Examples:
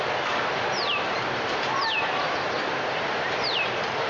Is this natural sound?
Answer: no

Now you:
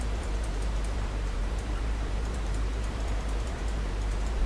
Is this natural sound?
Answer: no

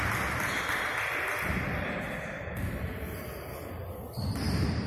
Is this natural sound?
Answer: yes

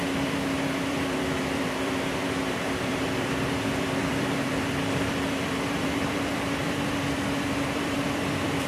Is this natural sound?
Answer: no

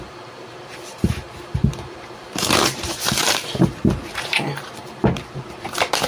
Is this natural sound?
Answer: no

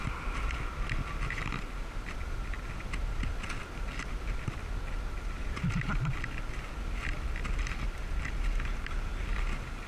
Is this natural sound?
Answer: yes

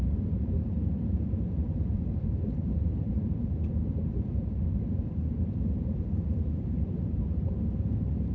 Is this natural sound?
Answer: no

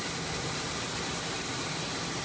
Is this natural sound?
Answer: no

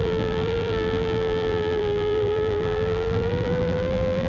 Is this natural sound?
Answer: no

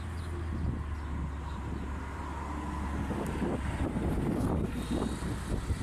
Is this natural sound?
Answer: yes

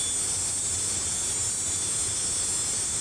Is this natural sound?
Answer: yes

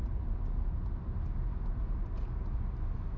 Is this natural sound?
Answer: yes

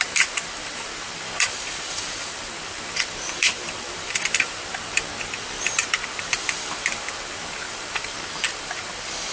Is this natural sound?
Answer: no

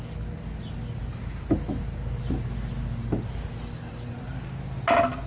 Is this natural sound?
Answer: yes